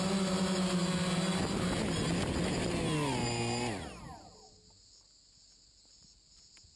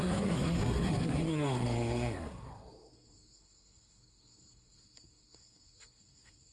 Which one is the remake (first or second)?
second